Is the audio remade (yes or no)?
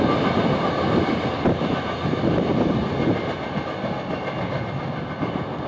no